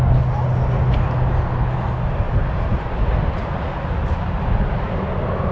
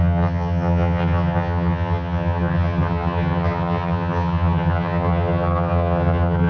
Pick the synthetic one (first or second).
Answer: second